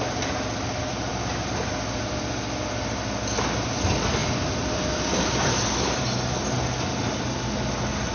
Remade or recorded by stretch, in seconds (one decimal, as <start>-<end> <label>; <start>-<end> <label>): 0.0-8.1 recorded